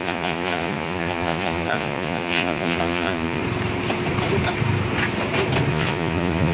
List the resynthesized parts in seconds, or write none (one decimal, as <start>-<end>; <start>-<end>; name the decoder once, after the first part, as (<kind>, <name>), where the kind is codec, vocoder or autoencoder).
0.0-3.4 (vocoder, Vocos); 5.7-6.5